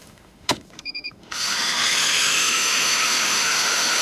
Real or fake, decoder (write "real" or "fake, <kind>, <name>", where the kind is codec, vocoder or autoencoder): fake, autoencoder, DAC-VAE